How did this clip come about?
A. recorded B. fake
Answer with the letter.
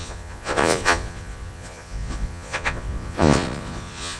B